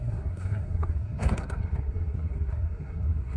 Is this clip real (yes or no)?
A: no